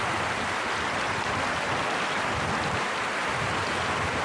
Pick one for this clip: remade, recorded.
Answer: recorded